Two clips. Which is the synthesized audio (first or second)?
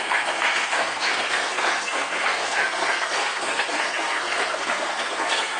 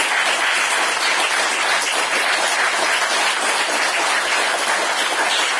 first